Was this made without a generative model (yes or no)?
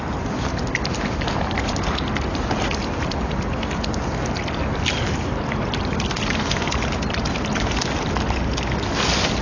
yes